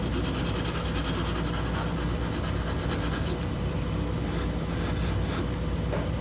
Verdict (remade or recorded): recorded